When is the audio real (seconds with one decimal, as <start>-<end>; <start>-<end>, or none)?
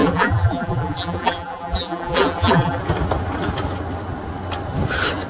2.8-5.3